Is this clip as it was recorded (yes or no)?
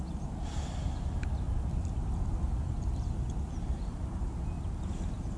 yes